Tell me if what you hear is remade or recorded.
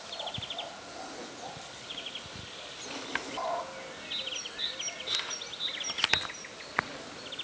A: recorded